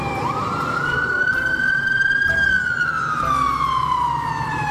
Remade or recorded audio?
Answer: recorded